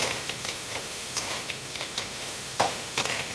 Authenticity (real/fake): fake